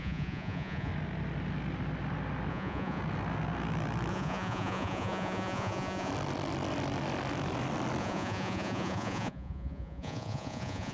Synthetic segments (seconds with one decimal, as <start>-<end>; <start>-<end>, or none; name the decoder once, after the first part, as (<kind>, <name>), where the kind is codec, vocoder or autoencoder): 0.0-0.9 (vocoder, Vocos); 2.5-3.0; 4.1-6.1; 8.0-10.9